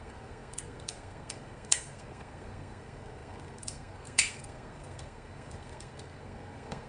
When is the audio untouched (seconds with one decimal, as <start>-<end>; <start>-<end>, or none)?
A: none